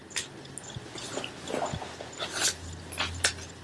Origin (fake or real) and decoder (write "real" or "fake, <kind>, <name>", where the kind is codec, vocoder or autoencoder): real